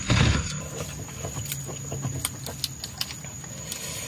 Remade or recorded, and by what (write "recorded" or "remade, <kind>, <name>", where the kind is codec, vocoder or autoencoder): recorded